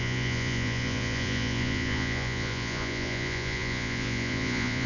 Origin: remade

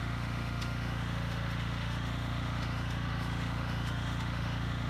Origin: remade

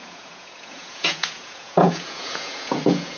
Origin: remade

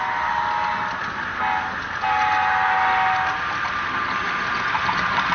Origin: recorded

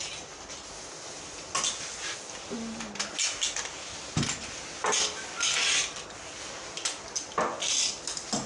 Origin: recorded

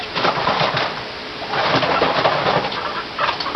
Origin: recorded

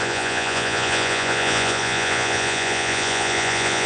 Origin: remade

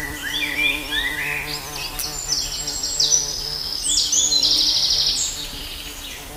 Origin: recorded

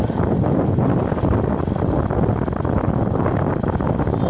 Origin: recorded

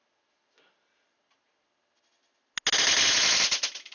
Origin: recorded